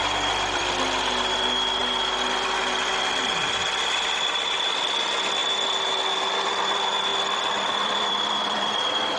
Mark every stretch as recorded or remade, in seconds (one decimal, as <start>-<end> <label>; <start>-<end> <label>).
0.0-1.8 remade; 1.8-2.7 recorded; 2.7-5.4 remade; 5.4-6.2 recorded; 6.2-9.2 remade